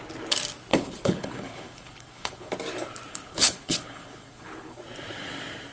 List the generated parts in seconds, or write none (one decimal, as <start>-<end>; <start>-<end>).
0.7-2.5; 3.1-4.8